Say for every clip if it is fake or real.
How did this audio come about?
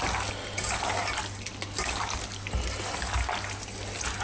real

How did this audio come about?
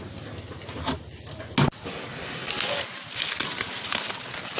real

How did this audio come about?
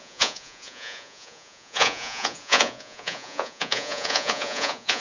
fake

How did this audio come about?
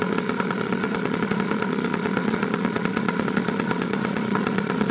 fake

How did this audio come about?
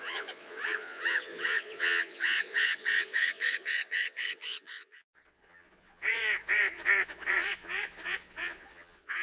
fake